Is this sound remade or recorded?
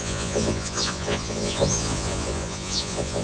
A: remade